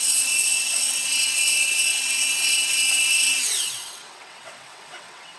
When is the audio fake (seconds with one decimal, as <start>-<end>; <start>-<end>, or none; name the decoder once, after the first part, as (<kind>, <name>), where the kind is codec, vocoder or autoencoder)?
0.0-5.4 (vocoder, WaveNeXt)